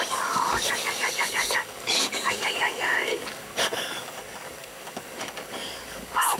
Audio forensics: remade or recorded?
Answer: remade